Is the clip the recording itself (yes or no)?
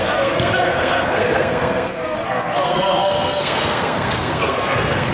no